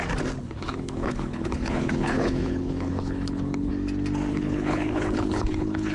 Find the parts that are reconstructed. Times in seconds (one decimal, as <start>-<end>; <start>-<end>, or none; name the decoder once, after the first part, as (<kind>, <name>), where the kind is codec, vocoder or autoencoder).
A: 0.4-3.7 (codec, HILCodec); 4.3-5.9